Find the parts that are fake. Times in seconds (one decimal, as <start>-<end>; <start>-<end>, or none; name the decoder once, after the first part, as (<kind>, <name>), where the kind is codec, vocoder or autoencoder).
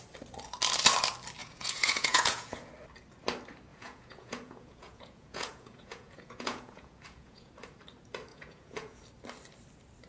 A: 1.4-2.7 (vocoder, Vocos); 3.7-7.5; 8.3-9.0